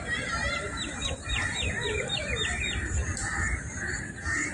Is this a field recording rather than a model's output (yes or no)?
no